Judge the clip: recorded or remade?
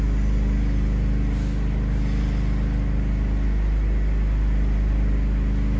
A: recorded